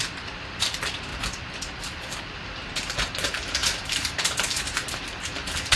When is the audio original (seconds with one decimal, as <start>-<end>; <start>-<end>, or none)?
1.1-2.2